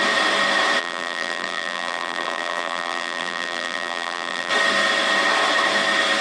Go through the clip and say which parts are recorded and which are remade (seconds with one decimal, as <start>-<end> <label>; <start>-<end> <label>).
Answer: 0.0-0.8 recorded; 0.8-4.5 remade; 4.5-6.2 recorded